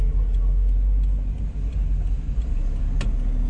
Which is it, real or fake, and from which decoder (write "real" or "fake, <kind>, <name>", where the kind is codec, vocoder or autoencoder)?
real